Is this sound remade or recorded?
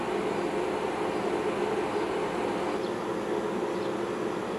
recorded